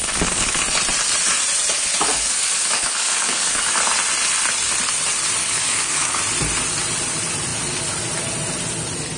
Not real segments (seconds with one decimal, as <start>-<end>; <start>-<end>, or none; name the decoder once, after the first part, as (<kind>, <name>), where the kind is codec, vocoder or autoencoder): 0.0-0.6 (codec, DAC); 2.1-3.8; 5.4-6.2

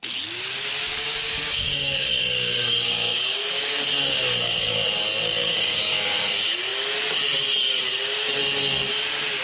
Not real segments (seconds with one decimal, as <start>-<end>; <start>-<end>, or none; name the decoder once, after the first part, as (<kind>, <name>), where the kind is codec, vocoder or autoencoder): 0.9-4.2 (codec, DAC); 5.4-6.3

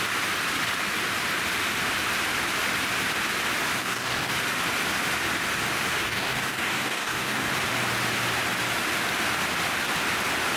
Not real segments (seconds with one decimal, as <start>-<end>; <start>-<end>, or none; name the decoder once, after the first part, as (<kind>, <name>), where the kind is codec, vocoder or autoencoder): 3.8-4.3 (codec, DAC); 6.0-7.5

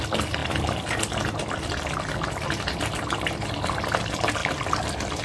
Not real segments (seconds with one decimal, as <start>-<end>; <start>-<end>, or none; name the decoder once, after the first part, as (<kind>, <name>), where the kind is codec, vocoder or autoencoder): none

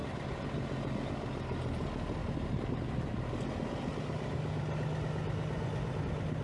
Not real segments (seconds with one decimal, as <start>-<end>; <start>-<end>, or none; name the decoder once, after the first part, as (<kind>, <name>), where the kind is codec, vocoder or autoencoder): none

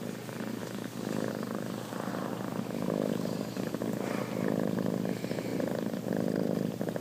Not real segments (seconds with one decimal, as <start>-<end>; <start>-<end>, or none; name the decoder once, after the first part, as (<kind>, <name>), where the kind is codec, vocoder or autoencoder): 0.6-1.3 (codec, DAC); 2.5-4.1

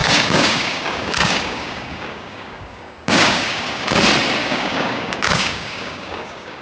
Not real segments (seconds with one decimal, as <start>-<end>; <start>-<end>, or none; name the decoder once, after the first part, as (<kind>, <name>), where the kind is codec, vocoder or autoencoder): 0.0-4.0 (codec, DAC); 4.4-6.6

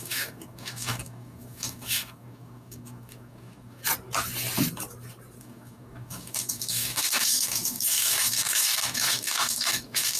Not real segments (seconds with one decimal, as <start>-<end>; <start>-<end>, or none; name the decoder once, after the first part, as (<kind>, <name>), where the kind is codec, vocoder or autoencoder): 0.0-3.8 (codec, DAC); 5.4-10.2